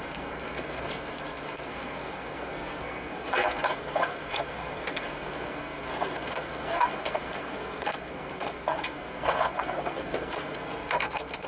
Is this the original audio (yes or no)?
no